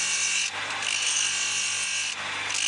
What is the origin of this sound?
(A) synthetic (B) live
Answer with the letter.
B